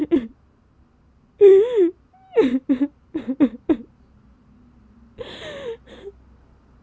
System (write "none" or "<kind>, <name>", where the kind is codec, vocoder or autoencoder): none